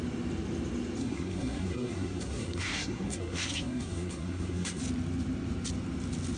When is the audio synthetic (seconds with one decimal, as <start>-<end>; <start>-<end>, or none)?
1.0-4.8